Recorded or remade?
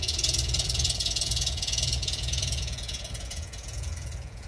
remade